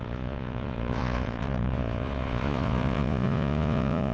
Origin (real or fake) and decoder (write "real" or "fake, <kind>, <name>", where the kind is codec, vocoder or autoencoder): fake, vocoder, Vocos